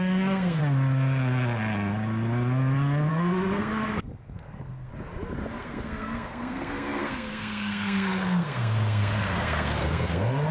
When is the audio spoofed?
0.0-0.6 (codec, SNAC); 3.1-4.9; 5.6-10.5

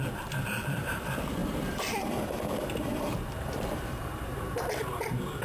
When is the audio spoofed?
0.0-5.4 (vocoder, BigVGAN v2)